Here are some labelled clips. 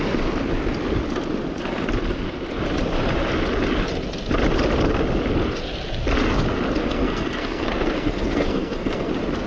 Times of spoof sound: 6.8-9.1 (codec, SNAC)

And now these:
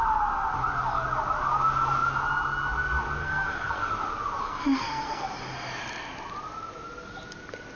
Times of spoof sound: 3.2-3.9 (codec, SNAC); 4.4-5.3

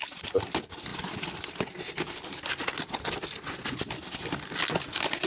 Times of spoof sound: none

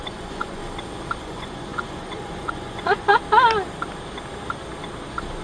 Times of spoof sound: 0.0-0.6 (vocoder, Vocos); 1.2-3.1